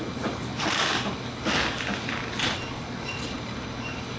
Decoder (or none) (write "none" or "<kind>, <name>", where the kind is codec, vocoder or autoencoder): none